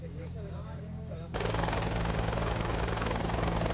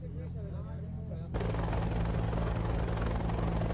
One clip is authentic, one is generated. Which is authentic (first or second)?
second